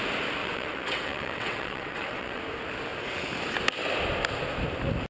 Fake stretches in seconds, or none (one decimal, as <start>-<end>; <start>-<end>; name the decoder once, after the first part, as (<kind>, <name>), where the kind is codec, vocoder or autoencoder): 0.4-2.4 (vocoder, WaveNeXt)